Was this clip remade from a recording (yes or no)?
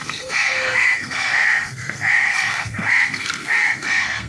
yes